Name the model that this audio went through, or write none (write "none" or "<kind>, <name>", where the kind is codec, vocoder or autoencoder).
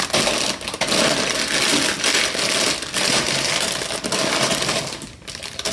none